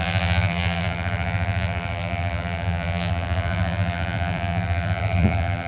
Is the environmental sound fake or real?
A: fake